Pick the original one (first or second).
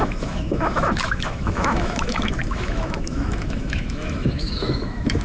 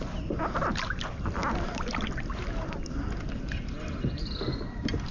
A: second